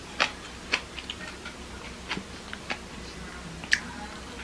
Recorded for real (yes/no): yes